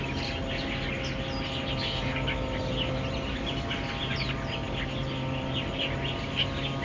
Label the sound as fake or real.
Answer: real